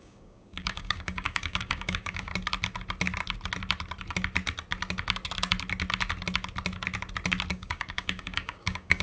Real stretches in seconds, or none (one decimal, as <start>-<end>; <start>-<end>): 2.3-7.5